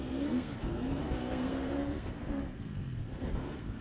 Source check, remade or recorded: remade